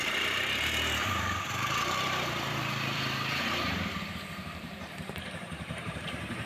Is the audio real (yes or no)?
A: no